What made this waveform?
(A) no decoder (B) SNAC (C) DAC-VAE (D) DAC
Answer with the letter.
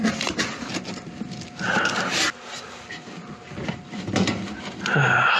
A